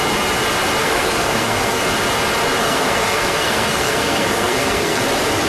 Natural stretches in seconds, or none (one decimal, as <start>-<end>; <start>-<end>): 0.0-0.8; 1.8-2.6; 5.0-5.5